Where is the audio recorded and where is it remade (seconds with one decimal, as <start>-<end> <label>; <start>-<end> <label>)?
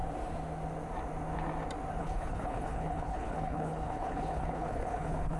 0.0-2.0 recorded; 2.0-5.4 remade